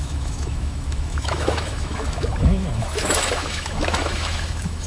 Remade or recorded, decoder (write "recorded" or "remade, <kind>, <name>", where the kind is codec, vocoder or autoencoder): remade, autoencoder, DAC-VAE